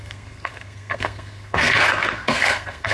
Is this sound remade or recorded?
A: remade